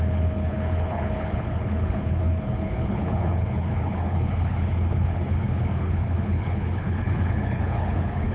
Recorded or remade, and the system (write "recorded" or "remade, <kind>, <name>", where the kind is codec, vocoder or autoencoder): remade, codec, HILCodec